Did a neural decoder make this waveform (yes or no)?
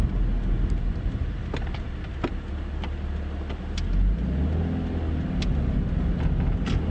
no